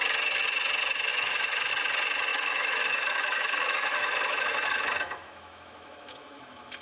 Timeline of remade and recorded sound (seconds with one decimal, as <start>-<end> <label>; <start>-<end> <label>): 0.0-1.1 recorded; 1.1-1.7 remade; 1.7-2.3 recorded; 2.3-6.8 remade